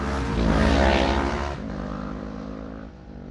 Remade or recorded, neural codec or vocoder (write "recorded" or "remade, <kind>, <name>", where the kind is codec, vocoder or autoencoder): recorded